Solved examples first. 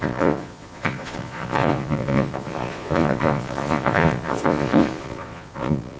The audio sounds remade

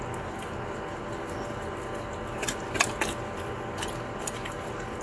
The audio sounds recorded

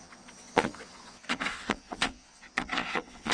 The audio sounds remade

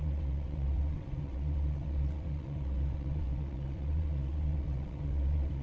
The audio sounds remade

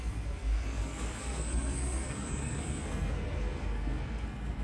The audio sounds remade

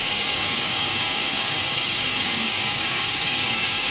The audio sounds remade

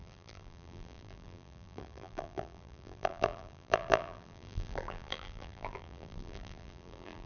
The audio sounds remade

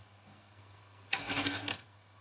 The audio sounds remade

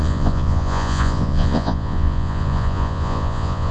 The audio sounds remade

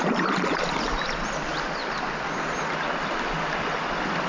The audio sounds recorded